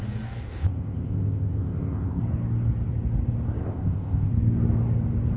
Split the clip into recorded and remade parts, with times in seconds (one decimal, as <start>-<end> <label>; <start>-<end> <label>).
0.0-0.4 recorded; 0.4-2.2 remade; 2.2-3.6 recorded; 3.6-4.3 remade; 4.3-5.4 recorded